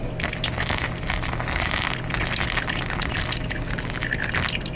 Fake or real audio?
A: real